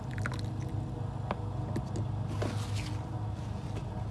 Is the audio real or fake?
real